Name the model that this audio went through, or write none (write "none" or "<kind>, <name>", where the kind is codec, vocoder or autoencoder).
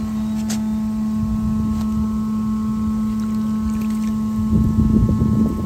none